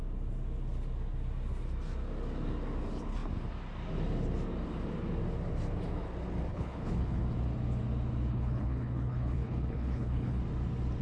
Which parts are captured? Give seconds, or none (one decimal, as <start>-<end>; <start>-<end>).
0.0-6.5; 7.2-8.3; 10.4-11.0

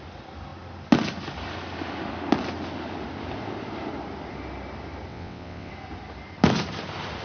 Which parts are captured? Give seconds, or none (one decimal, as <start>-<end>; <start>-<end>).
0.0-5.1; 5.7-7.2